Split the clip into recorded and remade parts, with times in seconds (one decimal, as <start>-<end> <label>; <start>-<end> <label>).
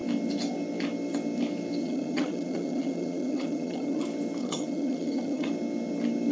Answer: 0.0-1.8 recorded; 1.8-4.0 remade; 4.0-4.4 recorded; 4.4-5.5 remade; 5.5-6.3 recorded